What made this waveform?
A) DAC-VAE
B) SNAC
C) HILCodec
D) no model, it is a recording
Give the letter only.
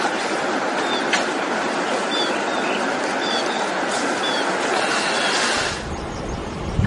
D